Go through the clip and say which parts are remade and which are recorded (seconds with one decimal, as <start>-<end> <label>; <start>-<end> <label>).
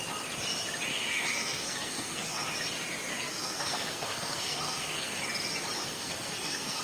0.0-0.9 recorded; 0.9-2.4 remade; 2.4-3.1 recorded; 3.1-5.2 remade; 5.2-5.8 recorded; 5.8-6.8 remade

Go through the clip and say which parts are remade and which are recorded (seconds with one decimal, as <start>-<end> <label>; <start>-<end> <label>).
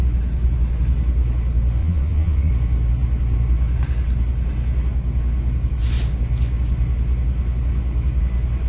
0.0-1.8 recorded; 1.8-2.5 remade; 2.5-8.7 recorded